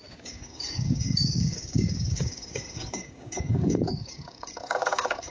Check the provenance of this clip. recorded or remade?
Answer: remade